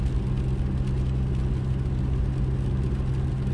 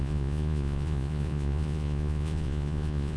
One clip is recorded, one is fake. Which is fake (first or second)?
second